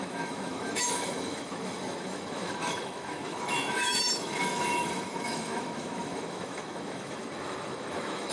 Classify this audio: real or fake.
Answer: fake